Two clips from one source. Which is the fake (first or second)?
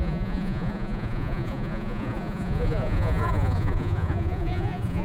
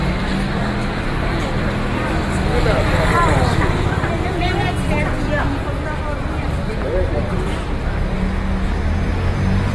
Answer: first